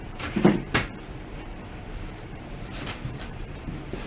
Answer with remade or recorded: remade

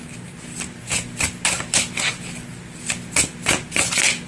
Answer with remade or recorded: recorded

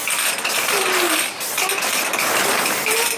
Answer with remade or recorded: remade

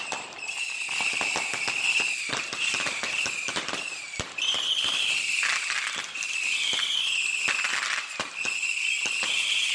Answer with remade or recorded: recorded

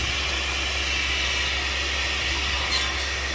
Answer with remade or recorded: recorded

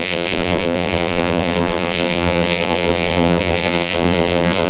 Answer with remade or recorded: remade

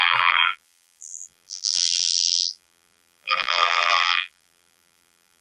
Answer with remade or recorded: remade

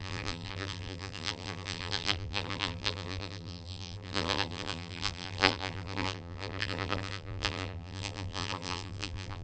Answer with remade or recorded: remade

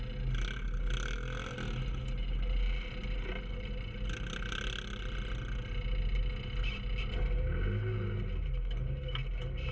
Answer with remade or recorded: recorded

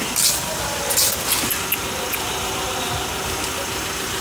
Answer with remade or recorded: recorded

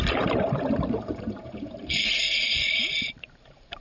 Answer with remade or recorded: remade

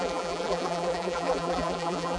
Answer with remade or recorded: remade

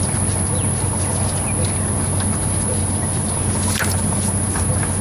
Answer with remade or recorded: recorded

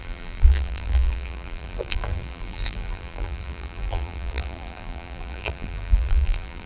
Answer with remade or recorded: remade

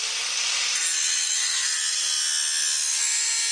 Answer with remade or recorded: recorded